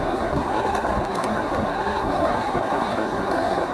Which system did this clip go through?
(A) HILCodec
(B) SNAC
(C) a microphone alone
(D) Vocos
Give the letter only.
B